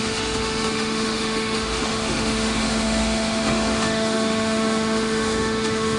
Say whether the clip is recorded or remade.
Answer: remade